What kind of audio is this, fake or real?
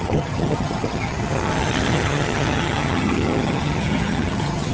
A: fake